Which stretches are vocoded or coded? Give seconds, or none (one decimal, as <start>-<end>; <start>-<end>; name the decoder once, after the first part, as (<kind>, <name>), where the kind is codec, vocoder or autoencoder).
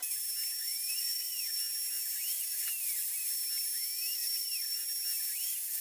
0.6-1.6 (vocoder, BigVGAN v2); 4.1-4.8